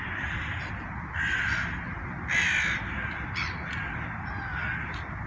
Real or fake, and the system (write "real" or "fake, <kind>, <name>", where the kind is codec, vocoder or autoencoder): real